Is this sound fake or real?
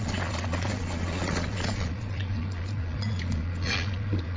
fake